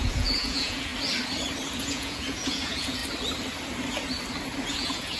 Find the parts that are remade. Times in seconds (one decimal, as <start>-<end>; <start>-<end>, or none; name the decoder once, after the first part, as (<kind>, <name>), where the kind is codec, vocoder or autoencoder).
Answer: 0.0-0.9 (vocoder, Vocos); 1.8-3.0; 4.7-5.2